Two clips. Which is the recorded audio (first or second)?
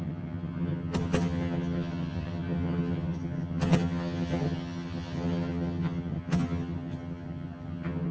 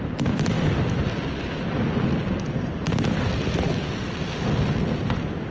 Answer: second